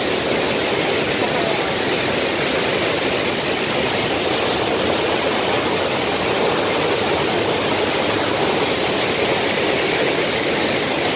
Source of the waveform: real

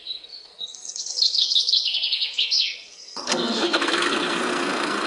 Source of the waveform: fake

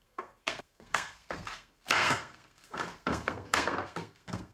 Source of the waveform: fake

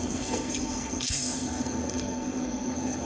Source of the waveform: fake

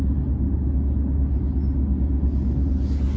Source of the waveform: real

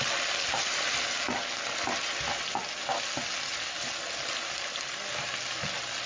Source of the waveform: real